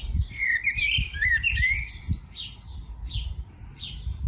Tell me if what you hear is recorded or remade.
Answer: recorded